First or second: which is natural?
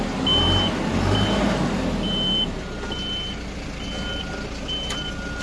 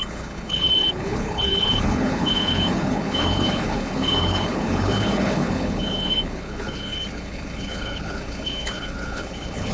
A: first